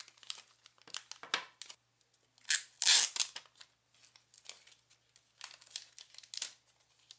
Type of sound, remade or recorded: recorded